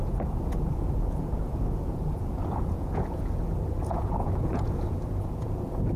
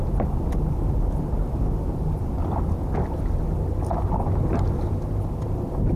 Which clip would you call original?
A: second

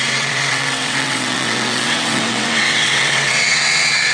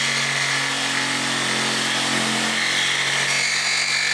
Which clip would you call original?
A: second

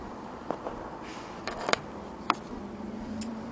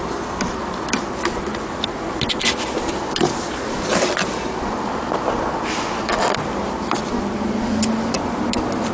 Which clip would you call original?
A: second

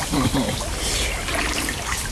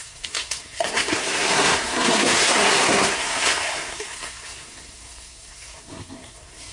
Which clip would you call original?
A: first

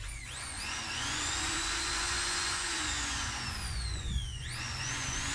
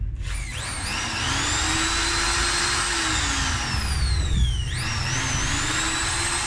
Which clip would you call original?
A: second